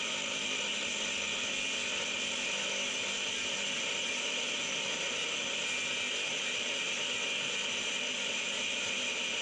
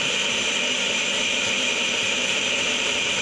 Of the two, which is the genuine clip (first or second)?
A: first